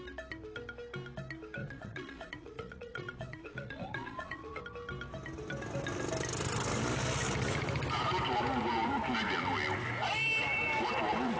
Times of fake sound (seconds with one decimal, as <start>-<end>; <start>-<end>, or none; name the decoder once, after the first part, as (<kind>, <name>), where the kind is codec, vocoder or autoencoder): 1.6-4.6 (vocoder, Vocos)